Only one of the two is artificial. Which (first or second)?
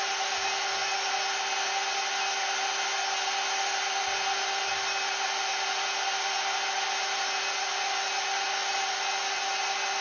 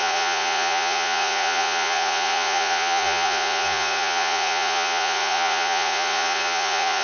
second